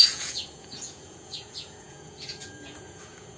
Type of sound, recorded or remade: remade